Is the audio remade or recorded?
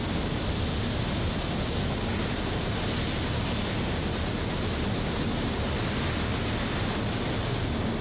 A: recorded